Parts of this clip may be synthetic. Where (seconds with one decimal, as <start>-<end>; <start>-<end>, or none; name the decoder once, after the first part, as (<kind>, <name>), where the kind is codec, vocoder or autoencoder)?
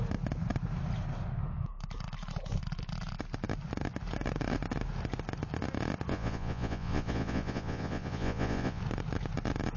6.1-8.8 (vocoder, Vocos)